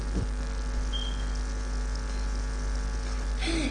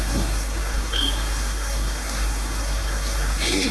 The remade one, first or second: second